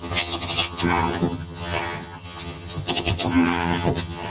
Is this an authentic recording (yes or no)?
no